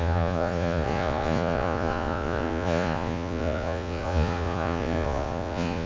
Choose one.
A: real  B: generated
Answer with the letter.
B